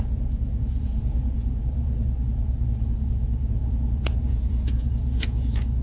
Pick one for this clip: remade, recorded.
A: remade